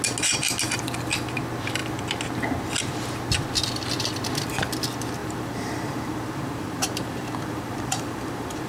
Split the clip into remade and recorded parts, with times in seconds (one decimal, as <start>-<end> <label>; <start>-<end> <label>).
0.0-5.2 recorded; 5.2-8.7 remade